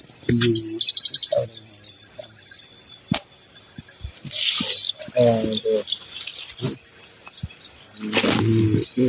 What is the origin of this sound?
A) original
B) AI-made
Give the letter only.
A